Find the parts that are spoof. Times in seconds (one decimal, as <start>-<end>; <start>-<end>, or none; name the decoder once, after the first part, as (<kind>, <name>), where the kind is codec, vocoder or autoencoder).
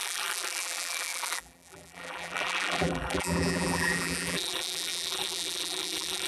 0.0-6.3 (vocoder, BigVGAN v2)